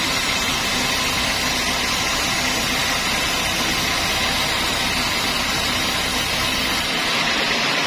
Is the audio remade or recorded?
recorded